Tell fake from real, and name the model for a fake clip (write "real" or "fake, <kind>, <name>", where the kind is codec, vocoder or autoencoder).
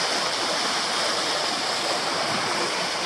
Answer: real